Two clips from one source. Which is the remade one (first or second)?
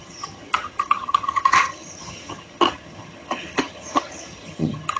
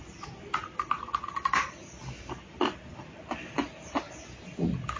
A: first